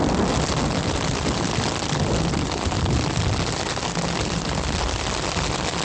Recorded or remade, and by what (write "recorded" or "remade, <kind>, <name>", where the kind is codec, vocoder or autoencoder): recorded